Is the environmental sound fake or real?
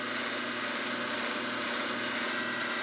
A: real